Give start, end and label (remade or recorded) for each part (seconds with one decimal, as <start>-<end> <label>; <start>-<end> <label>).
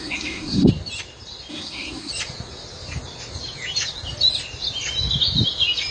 0.0-0.7 remade; 0.7-1.5 recorded; 1.5-2.1 remade; 2.1-5.9 recorded